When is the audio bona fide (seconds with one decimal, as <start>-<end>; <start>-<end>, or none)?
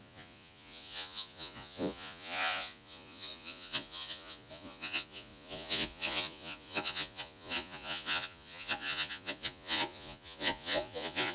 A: none